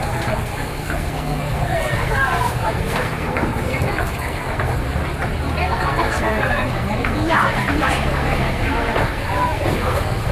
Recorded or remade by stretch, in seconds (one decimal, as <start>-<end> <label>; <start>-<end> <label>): 0.0-5.0 remade; 5.0-5.6 recorded; 5.6-10.3 remade